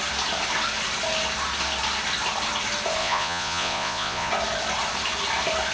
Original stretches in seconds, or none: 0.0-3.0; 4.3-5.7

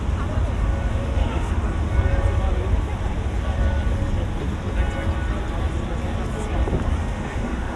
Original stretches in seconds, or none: 0.0-0.9; 1.5-7.0

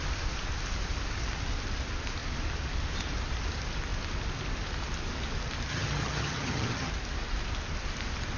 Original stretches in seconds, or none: 0.0-5.7; 6.9-8.4